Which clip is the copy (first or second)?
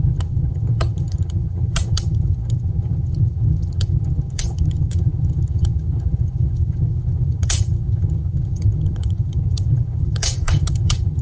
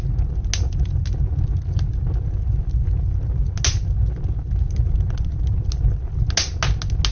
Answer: first